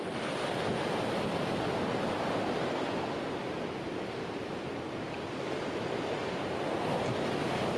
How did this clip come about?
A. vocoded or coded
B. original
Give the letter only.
B